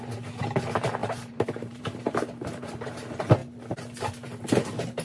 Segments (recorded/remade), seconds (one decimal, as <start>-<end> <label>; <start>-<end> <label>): 0.0-1.0 recorded; 1.0-3.0 remade; 3.0-5.0 recorded